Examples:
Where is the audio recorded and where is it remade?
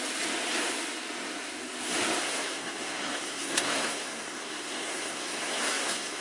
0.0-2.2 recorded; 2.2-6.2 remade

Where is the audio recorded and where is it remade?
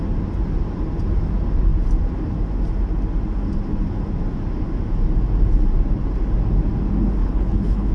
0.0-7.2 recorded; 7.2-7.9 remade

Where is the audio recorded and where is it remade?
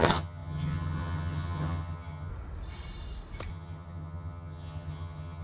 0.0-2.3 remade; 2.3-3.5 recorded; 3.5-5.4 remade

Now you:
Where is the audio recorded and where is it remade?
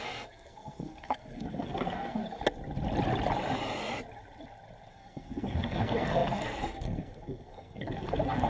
0.0-2.2 remade; 2.2-4.9 recorded; 4.9-8.5 remade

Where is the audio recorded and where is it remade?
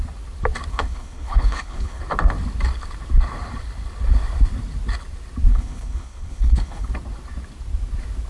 0.0-0.7 recorded; 0.7-2.0 remade; 2.0-5.5 recorded; 5.5-6.9 remade; 6.9-8.3 recorded